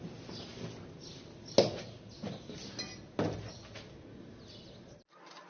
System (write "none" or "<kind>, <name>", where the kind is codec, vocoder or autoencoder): none